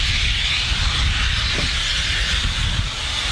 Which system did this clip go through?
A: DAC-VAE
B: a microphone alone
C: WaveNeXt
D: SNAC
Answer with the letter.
B